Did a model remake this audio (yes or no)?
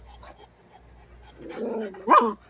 no